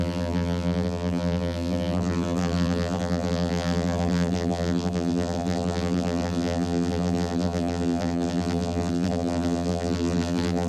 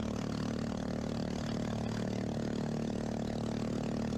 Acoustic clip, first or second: second